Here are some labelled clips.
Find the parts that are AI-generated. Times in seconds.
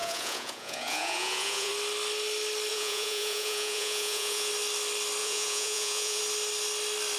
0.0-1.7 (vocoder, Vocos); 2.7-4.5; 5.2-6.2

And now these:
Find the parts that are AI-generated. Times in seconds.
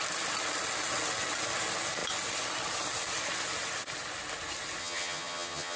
4.8-5.8 (vocoder, HiFi-GAN)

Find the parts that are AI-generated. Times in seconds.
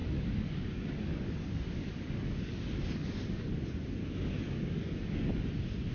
0.0-3.5 (codec, DAC); 4.0-5.5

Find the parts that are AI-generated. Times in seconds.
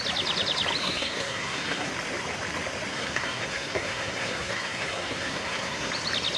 0.8-1.9 (codec, SNAC); 2.9-5.9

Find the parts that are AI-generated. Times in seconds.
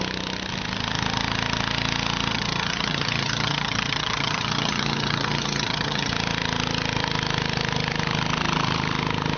2.3-6.1 (vocoder, HiFi-GAN)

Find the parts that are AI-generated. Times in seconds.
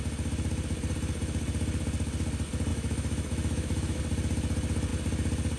2.7-4.0 (autoencoder, DAC-VAE)